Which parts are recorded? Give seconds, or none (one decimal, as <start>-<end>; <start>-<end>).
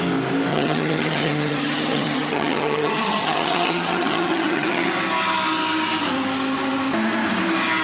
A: 0.0-0.5; 4.9-7.8